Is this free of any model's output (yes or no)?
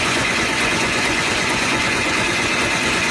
no